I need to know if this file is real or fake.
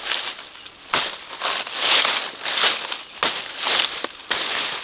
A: real